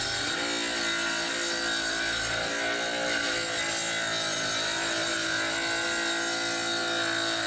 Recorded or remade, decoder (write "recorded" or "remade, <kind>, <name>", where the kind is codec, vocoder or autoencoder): recorded